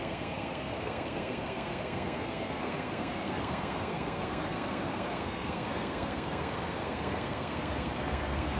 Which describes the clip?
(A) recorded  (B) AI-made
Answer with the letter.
B